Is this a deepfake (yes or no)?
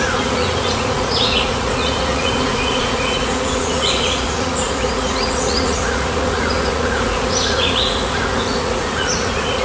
yes